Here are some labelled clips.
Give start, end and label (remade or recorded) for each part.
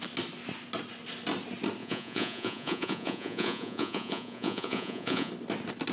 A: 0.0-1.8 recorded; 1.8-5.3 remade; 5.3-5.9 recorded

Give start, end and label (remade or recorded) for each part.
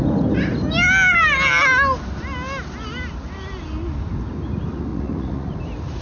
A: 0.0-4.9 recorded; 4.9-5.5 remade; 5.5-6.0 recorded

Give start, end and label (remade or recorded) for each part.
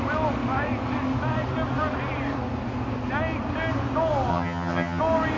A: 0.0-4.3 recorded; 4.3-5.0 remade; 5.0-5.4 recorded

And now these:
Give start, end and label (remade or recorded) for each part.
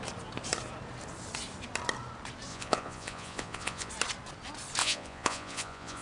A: 0.0-2.5 recorded; 2.5-3.9 remade; 3.9-4.8 recorded; 4.8-6.0 remade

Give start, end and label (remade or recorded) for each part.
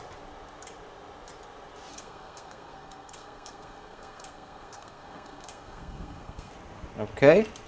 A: 0.0-1.9 recorded; 1.9-6.5 remade; 6.5-7.7 recorded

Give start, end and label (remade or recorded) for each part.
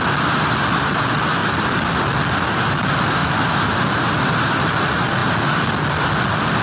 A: 0.0-1.4 recorded; 1.4-1.9 remade; 1.9-3.2 recorded; 3.2-4.0 remade; 4.0-6.6 recorded